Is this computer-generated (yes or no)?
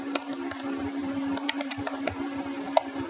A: yes